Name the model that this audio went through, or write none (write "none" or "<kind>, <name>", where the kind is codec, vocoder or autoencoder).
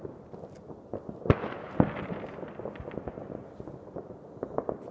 none